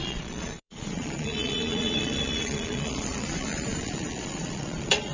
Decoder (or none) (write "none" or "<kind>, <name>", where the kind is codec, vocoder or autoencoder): vocoder, Vocos